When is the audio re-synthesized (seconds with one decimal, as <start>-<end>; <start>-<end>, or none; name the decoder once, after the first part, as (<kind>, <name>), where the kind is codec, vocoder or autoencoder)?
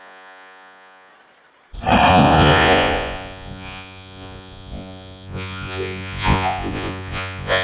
0.0-1.1 (vocoder, Vocos); 2.1-7.6